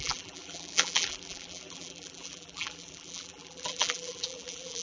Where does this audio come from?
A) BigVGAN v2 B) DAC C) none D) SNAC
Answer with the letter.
A